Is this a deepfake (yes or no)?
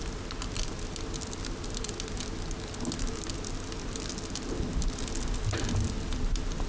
no